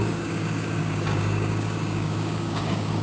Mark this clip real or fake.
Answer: fake